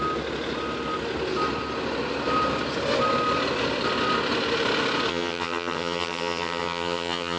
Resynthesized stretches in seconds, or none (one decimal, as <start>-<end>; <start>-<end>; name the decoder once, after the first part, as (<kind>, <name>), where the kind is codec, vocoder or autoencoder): 5.1-7.4 (vocoder, HiFi-GAN)